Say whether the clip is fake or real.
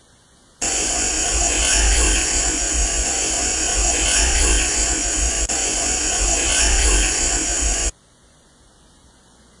fake